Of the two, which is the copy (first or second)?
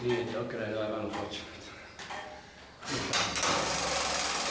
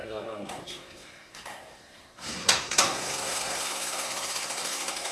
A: second